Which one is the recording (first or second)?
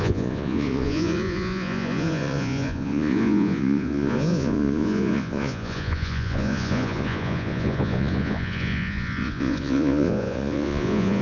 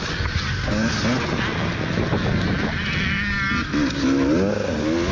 second